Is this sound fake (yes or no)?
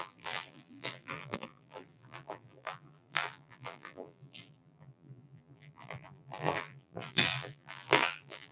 yes